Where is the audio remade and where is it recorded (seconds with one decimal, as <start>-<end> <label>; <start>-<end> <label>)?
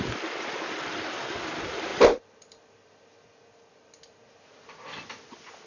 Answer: 0.0-1.9 recorded; 1.9-2.6 remade; 2.6-5.7 recorded